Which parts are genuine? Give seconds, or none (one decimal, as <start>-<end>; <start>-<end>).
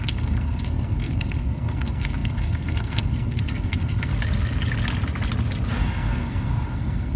4.1-5.8